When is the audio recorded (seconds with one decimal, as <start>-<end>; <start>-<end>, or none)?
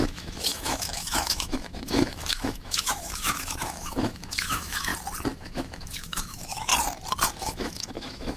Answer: 4.9-5.4; 6.7-7.4